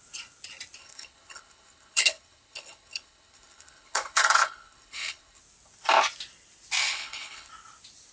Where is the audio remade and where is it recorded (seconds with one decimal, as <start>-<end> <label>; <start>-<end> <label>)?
0.0-0.8 recorded; 0.8-5.4 remade; 5.4-6.8 recorded; 6.8-7.5 remade; 7.5-8.1 recorded